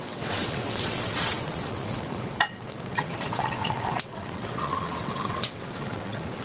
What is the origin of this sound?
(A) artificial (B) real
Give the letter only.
A